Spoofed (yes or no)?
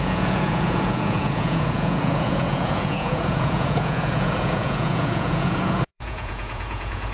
yes